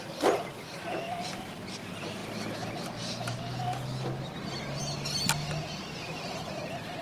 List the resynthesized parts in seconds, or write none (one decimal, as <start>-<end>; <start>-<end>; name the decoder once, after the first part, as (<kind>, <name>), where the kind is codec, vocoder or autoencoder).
none